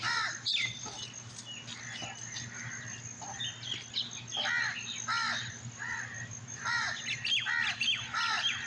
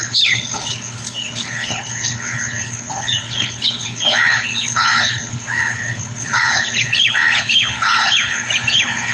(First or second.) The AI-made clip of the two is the second